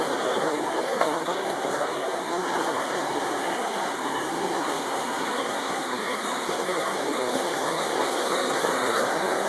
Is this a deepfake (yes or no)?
yes